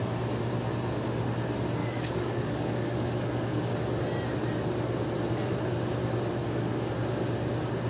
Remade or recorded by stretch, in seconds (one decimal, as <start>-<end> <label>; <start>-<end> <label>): 0.0-1.8 recorded; 1.8-3.7 remade; 3.7-6.4 recorded; 6.4-6.9 remade; 6.9-7.9 recorded